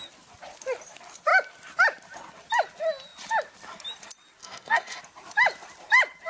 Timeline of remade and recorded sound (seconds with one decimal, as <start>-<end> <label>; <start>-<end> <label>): 0.0-4.4 recorded; 4.4-5.0 remade; 5.0-6.3 recorded